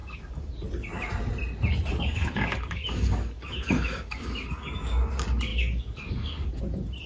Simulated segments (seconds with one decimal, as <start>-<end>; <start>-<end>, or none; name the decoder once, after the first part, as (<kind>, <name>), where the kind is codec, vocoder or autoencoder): 0.0-0.5 (codec, DAC); 1.9-5.1; 5.5-6.6